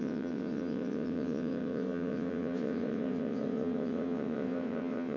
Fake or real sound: fake